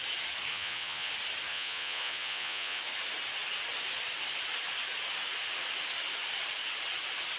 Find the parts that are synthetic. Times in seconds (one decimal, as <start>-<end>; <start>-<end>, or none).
0.5-1.1; 1.5-2.8